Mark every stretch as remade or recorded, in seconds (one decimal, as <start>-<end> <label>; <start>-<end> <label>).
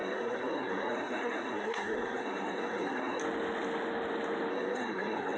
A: 0.0-3.2 remade; 3.2-4.5 recorded; 4.5-5.4 remade